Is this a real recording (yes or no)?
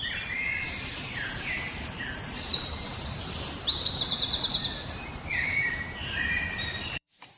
no